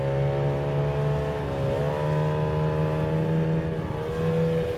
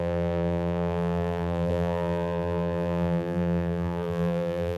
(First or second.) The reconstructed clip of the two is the second